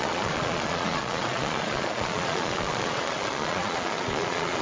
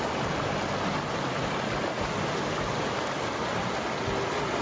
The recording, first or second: second